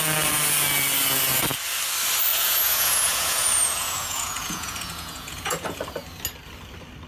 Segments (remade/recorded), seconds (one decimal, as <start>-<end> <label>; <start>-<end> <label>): 0.0-2.3 recorded; 2.3-5.8 remade; 5.8-7.1 recorded